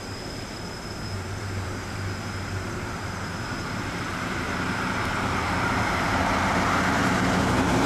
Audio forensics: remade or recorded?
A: remade